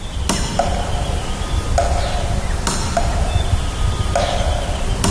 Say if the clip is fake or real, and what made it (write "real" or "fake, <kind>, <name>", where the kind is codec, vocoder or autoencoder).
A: real